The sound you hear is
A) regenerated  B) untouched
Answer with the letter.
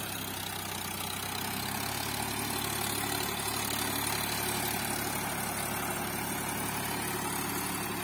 B